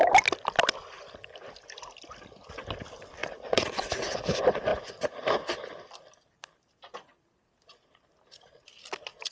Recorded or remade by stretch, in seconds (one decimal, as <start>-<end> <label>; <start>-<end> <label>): 0.0-3.2 recorded; 3.2-3.8 remade; 3.8-9.3 recorded